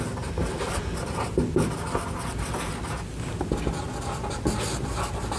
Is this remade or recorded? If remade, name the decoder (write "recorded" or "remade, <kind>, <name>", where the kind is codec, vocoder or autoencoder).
recorded